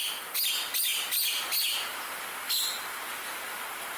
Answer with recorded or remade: recorded